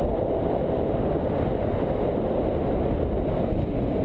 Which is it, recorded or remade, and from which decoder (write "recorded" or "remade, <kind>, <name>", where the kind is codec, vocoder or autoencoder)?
recorded